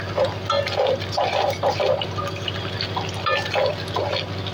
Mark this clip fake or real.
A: real